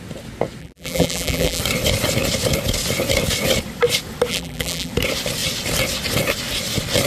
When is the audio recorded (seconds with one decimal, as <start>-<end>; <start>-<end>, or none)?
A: 0.0-0.6; 1.6-4.3; 4.9-7.1